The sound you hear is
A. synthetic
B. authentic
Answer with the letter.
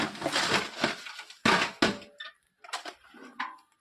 B